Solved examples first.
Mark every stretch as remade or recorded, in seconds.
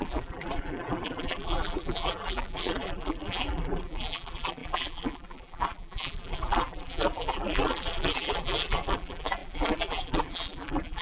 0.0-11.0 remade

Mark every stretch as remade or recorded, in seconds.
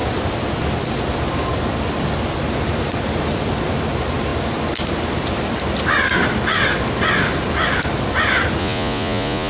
0.0-8.6 recorded; 8.6-9.5 remade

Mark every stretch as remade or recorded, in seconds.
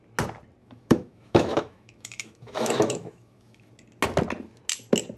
0.0-0.6 recorded; 0.6-3.7 remade; 3.7-5.2 recorded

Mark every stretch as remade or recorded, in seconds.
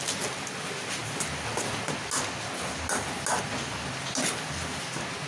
0.0-5.3 recorded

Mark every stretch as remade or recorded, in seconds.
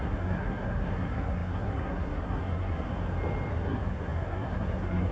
0.0-2.9 remade; 2.9-3.5 recorded; 3.5-5.1 remade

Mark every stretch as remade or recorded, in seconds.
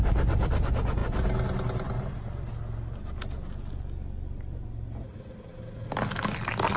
0.0-6.8 recorded